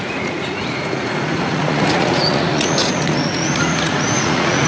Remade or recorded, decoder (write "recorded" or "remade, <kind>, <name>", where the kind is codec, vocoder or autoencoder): remade, vocoder, Vocos